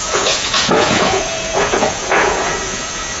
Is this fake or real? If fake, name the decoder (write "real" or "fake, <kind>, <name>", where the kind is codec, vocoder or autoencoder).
fake, vocoder, Vocos